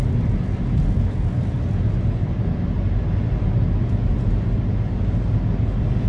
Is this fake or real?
real